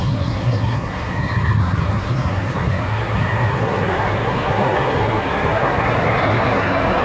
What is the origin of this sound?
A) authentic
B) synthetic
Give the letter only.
B